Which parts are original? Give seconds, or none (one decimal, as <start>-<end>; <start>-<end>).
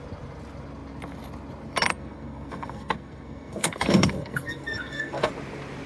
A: 0.0-1.9; 5.3-5.9